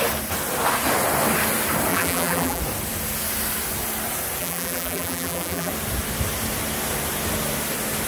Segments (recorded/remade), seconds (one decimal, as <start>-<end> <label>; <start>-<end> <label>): 0.0-1.9 recorded; 1.9-2.6 remade; 2.6-4.4 recorded; 4.4-5.7 remade; 5.7-8.1 recorded